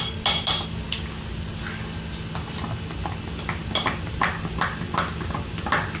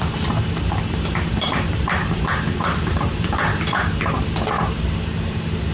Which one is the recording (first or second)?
first